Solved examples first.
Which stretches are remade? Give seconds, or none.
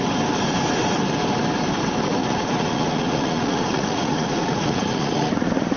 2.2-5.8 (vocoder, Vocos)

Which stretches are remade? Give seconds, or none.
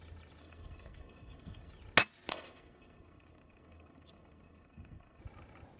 0.4-1.7 (codec, SNAC); 2.3-5.2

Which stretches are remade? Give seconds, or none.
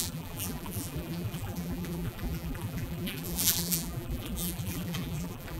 0.0-5.6 (vocoder, BigVGAN v2)